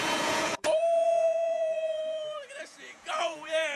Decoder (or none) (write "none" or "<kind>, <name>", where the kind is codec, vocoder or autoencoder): vocoder, Vocos